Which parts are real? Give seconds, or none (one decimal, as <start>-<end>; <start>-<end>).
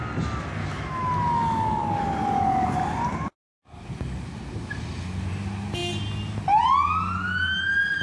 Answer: 0.0-0.6; 1.8-8.0